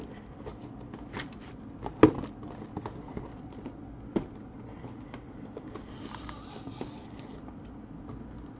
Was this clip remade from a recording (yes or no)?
no